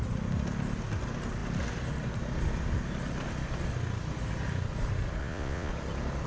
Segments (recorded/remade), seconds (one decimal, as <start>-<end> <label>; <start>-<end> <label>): 0.0-5.2 recorded; 5.2-5.7 remade; 5.7-6.3 recorded